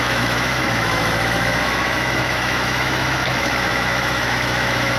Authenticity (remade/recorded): remade